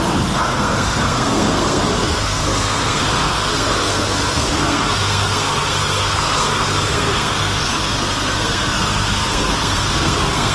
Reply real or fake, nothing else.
fake